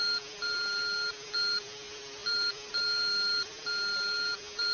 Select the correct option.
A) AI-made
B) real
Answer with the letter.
B